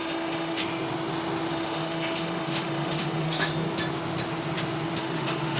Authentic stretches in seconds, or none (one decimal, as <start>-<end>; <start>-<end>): 0.6-1.5; 3.5-5.0